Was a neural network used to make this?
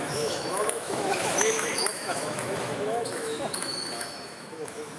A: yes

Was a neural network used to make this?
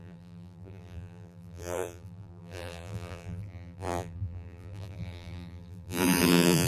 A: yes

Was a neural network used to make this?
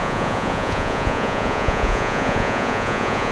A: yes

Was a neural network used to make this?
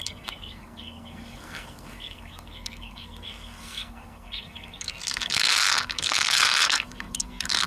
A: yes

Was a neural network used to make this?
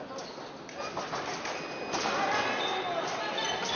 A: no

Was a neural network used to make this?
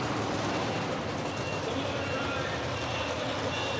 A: no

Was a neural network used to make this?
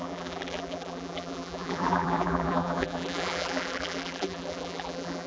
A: yes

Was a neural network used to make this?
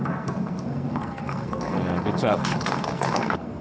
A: yes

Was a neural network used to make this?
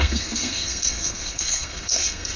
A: yes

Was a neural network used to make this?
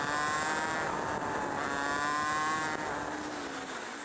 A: no